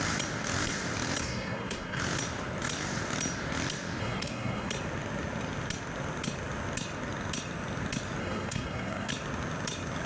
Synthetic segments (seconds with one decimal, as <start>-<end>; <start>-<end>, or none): 1.2-2.0; 4.0-4.7; 8.2-9.1